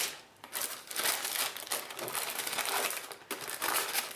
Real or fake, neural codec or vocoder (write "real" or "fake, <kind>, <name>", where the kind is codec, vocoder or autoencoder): real